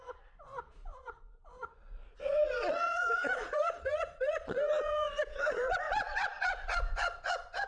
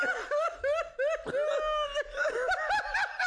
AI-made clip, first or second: first